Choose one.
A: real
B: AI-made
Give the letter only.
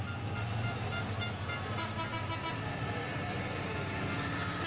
A